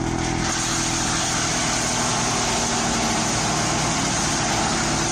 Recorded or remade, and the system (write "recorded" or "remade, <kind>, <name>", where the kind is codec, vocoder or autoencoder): recorded